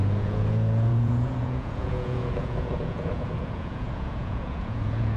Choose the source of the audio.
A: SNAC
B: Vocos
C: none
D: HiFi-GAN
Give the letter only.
B